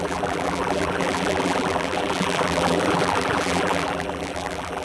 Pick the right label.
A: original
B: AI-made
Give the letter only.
B